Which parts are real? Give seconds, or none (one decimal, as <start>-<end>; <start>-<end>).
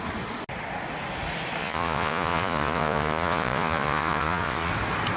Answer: 0.0-1.6; 4.7-5.2